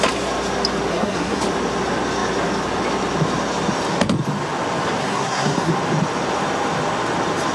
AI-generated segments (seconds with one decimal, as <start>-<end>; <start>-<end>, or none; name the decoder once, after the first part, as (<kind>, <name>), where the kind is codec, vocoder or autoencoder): 0.9-1.4 (codec, SNAC); 5.0-5.7